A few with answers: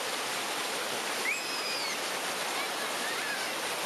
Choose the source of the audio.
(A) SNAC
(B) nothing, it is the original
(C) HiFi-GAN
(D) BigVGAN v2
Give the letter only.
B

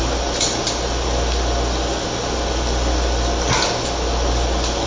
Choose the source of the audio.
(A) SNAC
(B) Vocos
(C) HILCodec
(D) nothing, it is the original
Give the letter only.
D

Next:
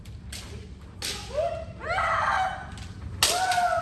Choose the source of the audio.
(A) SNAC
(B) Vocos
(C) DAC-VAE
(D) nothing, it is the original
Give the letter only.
D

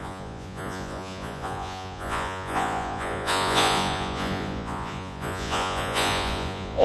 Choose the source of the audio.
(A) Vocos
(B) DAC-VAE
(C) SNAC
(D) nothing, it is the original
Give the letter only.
A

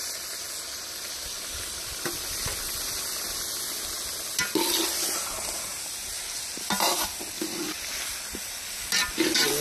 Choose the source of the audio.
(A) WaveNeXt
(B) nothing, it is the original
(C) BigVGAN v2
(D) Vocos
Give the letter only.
B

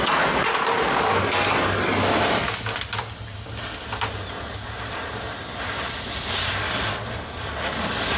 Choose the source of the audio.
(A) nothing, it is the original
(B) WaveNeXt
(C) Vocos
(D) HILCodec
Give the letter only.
A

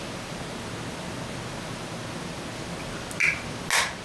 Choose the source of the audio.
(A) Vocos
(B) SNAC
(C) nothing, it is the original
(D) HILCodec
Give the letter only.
C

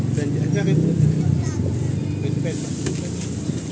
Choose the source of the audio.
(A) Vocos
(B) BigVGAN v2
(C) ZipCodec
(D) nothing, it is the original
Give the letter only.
D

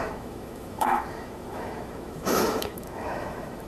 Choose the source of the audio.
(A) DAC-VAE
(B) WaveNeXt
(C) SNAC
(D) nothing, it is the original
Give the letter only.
A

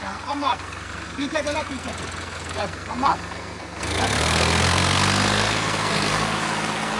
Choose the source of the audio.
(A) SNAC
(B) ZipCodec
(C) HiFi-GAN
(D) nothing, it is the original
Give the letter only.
A